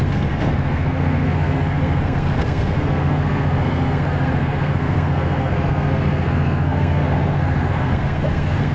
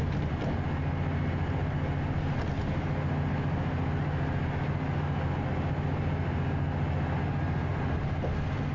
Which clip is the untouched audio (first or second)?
second